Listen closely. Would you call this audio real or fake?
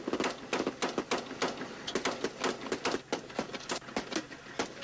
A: real